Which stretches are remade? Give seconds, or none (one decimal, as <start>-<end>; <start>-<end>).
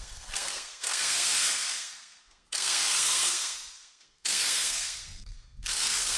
0.0-6.2